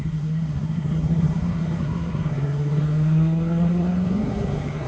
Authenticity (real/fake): fake